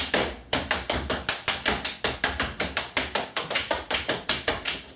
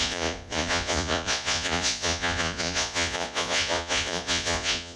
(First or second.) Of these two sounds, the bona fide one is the first